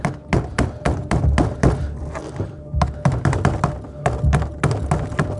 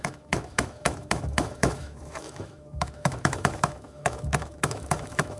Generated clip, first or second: second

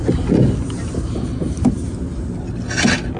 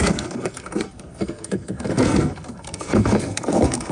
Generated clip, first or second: second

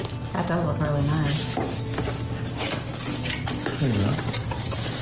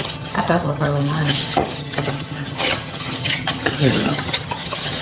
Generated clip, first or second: second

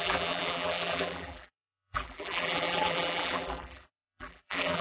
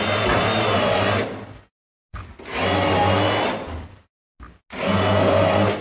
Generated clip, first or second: first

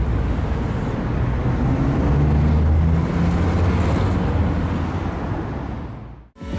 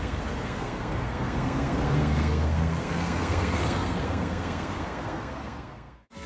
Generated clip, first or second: second